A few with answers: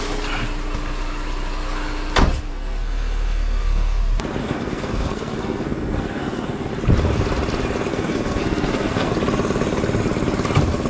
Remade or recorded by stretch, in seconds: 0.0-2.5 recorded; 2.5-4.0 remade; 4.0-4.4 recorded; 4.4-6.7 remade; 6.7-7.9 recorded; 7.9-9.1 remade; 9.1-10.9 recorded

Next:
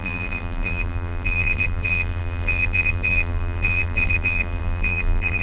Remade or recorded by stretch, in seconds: 0.0-5.4 remade

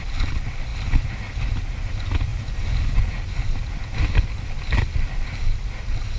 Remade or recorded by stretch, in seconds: 0.0-2.3 recorded; 2.3-3.1 remade; 3.1-6.2 recorded

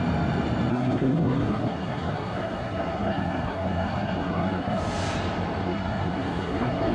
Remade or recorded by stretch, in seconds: 0.0-0.7 recorded; 0.7-4.8 remade; 4.8-5.6 recorded; 5.6-6.9 remade